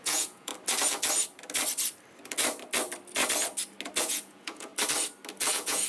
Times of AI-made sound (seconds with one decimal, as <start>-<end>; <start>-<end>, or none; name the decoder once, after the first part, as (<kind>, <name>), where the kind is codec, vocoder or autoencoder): 0.0-0.5 (vocoder, Vocos); 4.0-4.7; 5.5-5.9